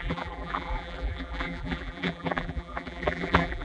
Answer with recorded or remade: remade